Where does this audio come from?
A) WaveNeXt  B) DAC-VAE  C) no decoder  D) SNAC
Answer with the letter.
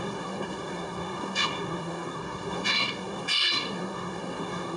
D